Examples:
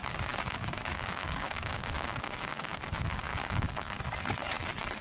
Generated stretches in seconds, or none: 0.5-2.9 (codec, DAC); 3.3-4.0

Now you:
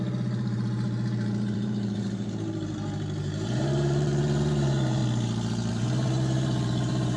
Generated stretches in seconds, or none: 0.0-5.0 (vocoder, BigVGAN v2); 5.7-7.2

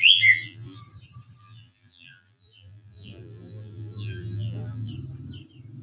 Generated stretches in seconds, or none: 0.0-0.8 (vocoder, BigVGAN v2); 1.4-4.9